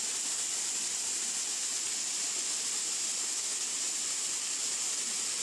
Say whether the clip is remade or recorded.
recorded